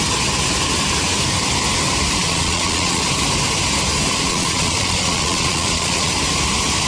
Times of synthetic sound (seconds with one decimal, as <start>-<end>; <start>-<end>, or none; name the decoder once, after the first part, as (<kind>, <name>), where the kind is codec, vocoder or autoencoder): 2.2-3.0 (vocoder, Vocos); 4.3-6.1